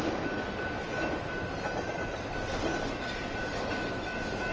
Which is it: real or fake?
real